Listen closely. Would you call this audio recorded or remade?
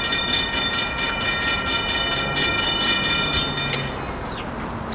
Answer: recorded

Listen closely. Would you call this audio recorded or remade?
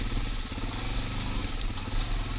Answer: recorded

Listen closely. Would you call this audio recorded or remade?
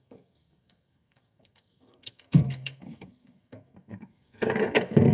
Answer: remade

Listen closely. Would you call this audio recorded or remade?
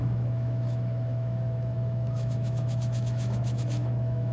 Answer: remade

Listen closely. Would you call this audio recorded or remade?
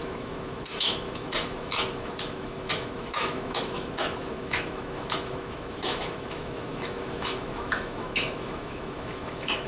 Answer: remade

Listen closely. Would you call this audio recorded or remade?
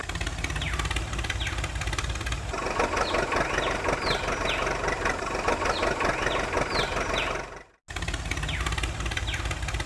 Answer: recorded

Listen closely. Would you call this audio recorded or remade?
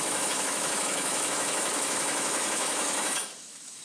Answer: remade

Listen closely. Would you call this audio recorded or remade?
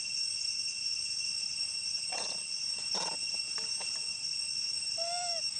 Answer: recorded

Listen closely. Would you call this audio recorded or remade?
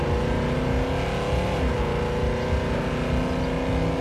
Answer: recorded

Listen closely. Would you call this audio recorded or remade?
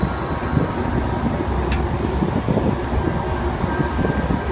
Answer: recorded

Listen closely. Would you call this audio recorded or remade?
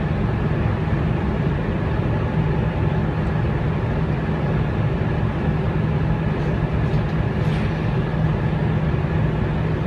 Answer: recorded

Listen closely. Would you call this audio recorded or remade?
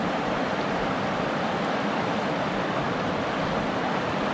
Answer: recorded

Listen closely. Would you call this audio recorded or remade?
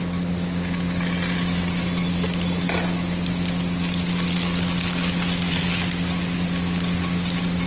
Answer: recorded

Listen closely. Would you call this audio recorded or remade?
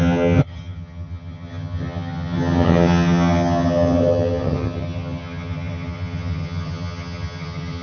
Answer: remade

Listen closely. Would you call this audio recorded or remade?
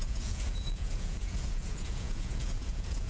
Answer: remade